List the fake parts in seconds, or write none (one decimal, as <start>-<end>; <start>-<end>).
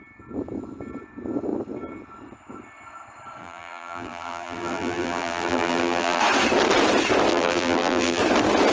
3.4-6.2; 7.3-8.2